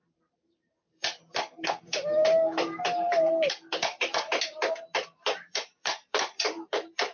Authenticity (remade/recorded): remade